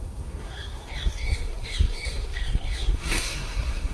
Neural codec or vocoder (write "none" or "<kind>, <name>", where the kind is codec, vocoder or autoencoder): codec, SNAC